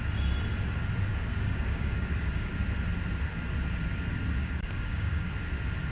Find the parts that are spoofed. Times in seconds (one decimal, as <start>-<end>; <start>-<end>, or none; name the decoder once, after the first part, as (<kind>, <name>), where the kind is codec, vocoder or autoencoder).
1.1-2.5 (codec, DAC); 4.4-5.3